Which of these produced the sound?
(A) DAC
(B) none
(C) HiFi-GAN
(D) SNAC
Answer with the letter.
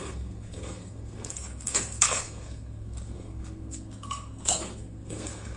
D